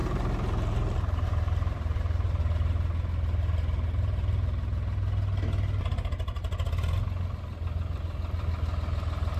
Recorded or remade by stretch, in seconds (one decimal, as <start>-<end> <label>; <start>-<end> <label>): 0.0-2.4 remade; 2.4-9.4 recorded